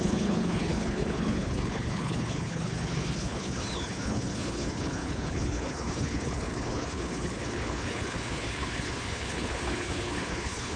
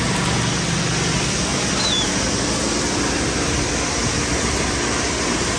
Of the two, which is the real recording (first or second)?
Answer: second